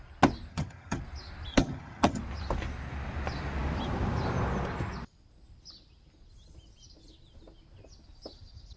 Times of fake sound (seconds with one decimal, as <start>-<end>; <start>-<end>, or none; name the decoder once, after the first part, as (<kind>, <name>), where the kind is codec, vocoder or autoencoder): 0.5-1.0 (vocoder, HiFi-GAN); 1.5-2.2